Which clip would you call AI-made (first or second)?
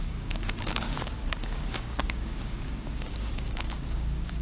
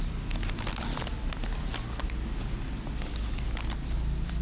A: first